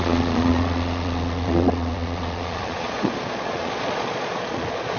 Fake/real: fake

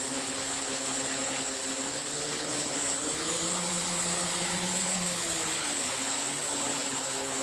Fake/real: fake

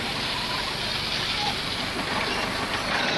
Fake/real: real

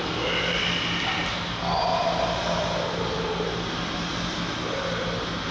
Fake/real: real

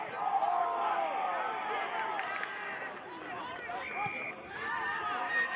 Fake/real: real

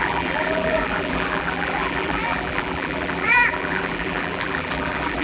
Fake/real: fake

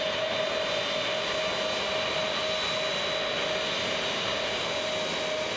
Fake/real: real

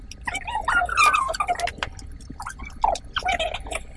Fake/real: real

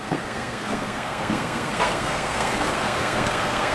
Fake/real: fake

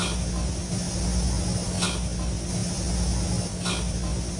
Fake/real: real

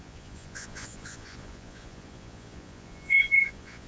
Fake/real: fake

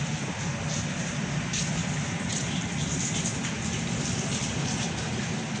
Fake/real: real